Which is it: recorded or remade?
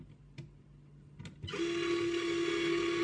recorded